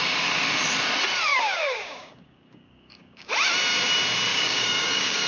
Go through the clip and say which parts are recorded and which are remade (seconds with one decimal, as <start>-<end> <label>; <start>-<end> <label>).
0.0-1.3 recorded; 1.3-3.3 remade; 3.3-4.3 recorded; 4.3-5.3 remade